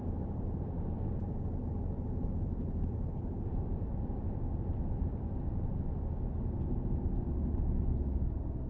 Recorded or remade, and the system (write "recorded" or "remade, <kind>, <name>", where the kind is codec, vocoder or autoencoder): recorded